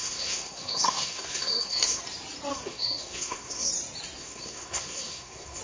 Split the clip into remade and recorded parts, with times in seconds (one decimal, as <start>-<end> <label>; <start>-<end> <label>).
0.0-2.0 remade; 2.0-2.5 recorded; 2.5-3.7 remade; 3.7-4.2 recorded; 4.2-5.6 remade